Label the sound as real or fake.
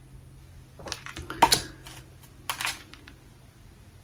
real